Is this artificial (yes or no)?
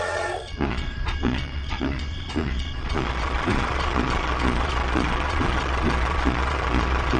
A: yes